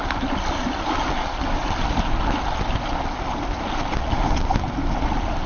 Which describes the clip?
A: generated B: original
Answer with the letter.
B